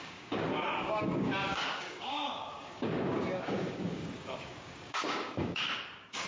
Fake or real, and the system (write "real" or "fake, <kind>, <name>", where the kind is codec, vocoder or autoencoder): fake, codec, DAC